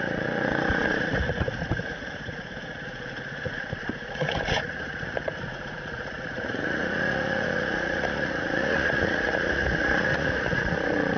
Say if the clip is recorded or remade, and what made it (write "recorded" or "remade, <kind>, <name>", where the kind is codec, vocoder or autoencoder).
remade, vocoder, Vocos